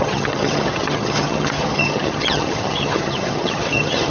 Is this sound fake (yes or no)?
yes